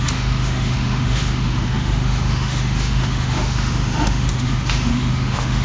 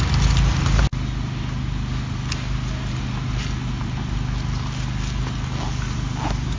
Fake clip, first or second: first